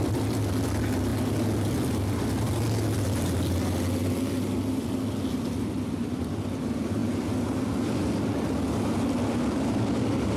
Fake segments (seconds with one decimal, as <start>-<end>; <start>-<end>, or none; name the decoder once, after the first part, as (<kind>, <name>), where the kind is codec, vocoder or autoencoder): none